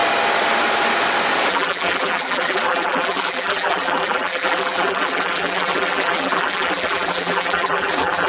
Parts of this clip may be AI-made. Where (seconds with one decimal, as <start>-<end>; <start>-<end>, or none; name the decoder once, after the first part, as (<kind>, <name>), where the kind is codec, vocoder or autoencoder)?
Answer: 1.5-8.3 (vocoder, BigVGAN v2)